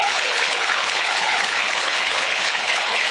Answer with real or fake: fake